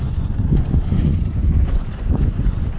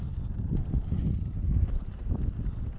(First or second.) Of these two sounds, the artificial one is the first